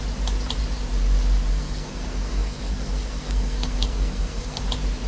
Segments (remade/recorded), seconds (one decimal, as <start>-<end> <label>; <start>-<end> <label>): 0.0-1.5 recorded; 1.5-4.6 remade; 4.6-5.1 recorded